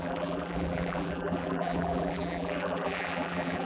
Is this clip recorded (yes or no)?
no